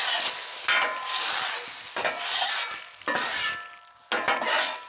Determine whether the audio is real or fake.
real